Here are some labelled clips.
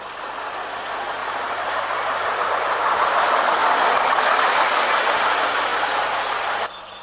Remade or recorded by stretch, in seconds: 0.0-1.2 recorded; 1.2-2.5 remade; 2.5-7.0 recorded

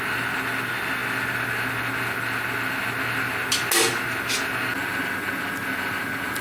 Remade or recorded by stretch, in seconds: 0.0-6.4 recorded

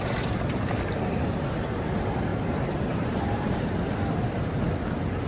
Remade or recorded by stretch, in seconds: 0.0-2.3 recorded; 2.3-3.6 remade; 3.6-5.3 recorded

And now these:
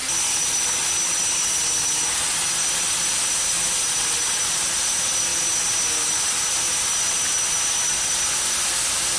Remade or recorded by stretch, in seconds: 0.0-9.2 recorded